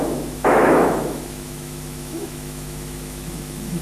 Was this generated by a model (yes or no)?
yes